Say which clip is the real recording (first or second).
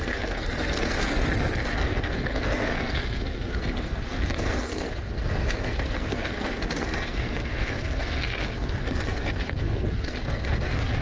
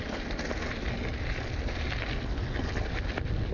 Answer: second